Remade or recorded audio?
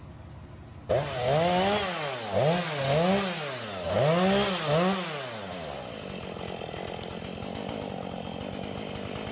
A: recorded